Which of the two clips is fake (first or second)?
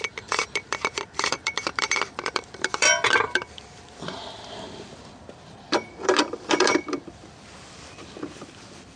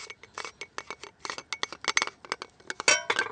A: first